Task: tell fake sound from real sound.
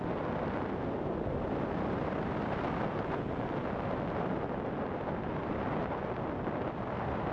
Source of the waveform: real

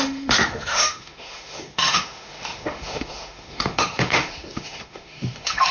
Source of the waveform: fake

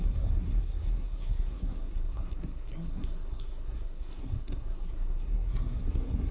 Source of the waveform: fake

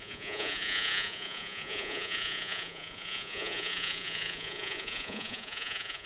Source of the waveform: fake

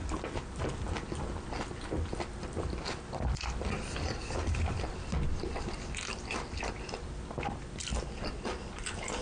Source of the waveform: real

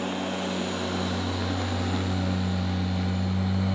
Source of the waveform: real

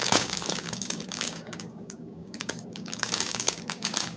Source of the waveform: fake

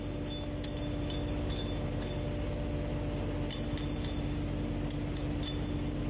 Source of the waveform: real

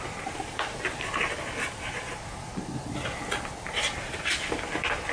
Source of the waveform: real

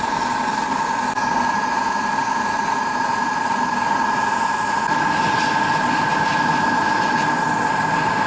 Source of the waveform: real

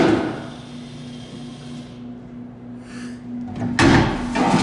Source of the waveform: real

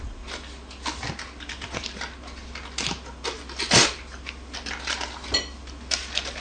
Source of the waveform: real